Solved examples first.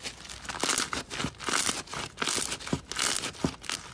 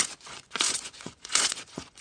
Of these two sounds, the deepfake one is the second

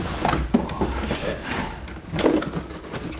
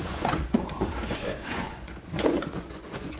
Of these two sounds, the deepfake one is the second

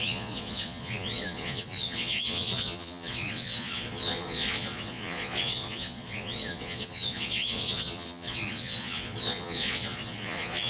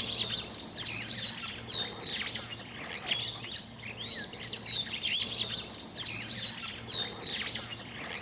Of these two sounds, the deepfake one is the first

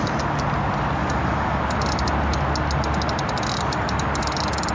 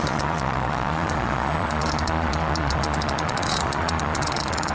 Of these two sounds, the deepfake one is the second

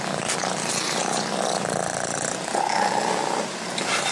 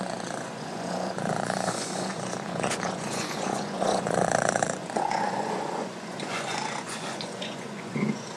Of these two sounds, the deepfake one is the second